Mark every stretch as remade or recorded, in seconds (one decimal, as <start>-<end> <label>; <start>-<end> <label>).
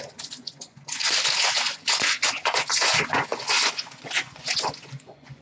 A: 0.0-5.4 remade